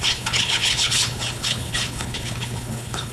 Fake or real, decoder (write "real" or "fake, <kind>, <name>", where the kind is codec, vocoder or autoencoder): fake, codec, HILCodec